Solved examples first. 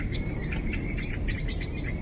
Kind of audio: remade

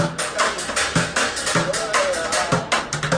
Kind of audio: recorded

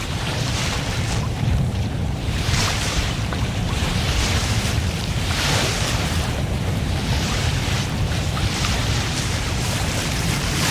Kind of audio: remade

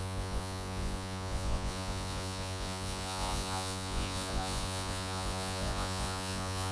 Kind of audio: remade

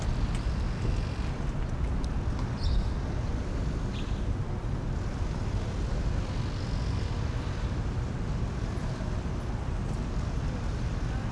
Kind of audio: recorded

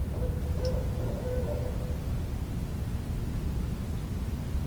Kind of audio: recorded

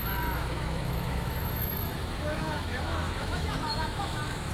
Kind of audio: remade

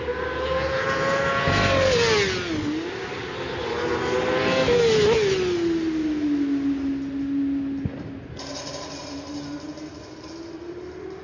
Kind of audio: recorded